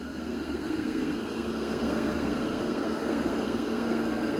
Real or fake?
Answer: fake